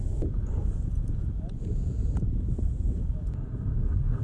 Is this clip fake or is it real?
fake